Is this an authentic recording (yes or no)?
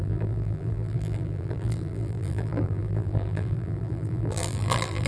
no